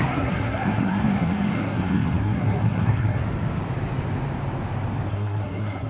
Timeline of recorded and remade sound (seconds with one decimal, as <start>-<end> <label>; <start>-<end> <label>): 0.0-3.2 remade; 3.2-5.1 recorded; 5.1-5.9 remade